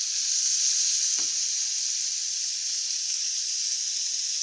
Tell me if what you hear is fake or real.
real